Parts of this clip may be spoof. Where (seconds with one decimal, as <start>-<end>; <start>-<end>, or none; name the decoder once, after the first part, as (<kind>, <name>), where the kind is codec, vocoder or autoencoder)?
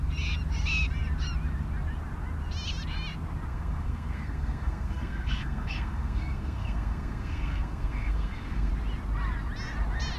3.5-8.7 (codec, SNAC)